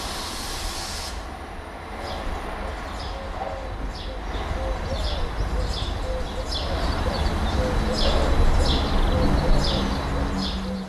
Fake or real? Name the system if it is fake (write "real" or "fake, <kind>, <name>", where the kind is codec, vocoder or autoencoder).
real